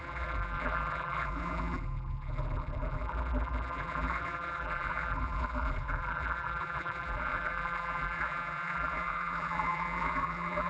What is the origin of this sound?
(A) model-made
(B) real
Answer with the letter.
A